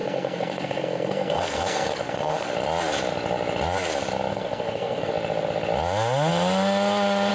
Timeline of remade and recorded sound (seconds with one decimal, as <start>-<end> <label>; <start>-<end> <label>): 0.0-2.5 remade; 2.5-4.3 recorded; 4.3-5.1 remade; 5.1-7.3 recorded